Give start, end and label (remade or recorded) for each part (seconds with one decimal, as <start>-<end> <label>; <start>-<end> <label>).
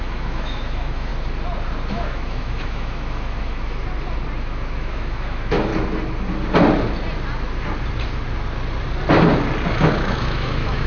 0.0-1.1 remade; 1.1-1.9 recorded; 1.9-3.8 remade; 3.8-4.4 recorded; 4.4-5.7 remade; 5.7-9.7 recorded; 9.7-10.9 remade